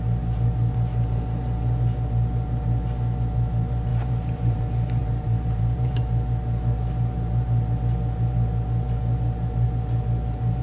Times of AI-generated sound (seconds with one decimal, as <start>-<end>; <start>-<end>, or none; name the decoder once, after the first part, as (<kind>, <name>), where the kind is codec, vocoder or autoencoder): 3.9-4.6 (vocoder, BigVGAN v2); 5.0-6.0